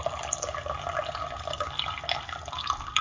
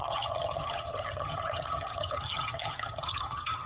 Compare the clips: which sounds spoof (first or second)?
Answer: second